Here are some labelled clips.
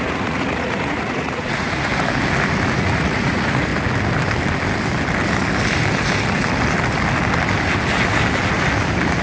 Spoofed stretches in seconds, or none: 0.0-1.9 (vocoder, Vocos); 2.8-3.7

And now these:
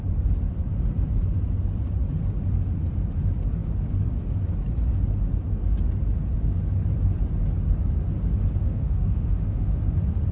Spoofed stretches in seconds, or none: 8.6-9.8 (autoencoder, DAC-VAE)

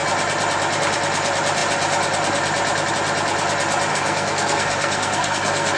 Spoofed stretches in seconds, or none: 3.9-5.8 (codec, SNAC)

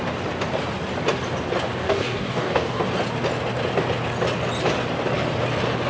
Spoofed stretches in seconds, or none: 1.8-2.8 (codec, DAC)

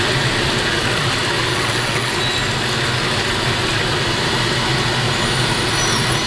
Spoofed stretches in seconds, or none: 1.5-2.1 (vocoder, WaveNeXt)

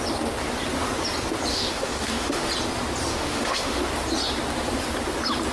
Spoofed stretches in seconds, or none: 1.5-2.5 (autoencoder, DAC-VAE); 3.1-3.8

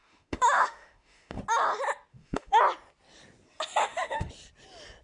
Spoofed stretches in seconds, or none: 0.0-1.4 (autoencoder, DAC-VAE); 2.1-2.6; 3.8-4.3

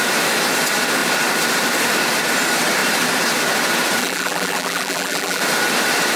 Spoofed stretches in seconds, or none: 4.0-5.4 (vocoder, BigVGAN v2)